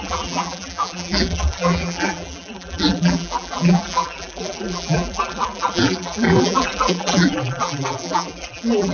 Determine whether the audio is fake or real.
fake